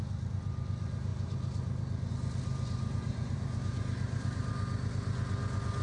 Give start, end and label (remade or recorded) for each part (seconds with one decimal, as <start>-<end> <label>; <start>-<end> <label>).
0.0-2.5 recorded; 2.5-4.5 remade; 4.5-5.8 recorded